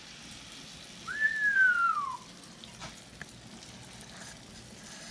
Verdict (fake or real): real